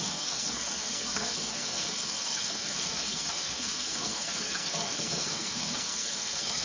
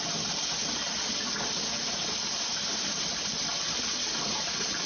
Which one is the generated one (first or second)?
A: first